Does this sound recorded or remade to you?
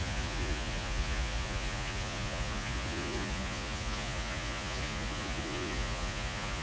remade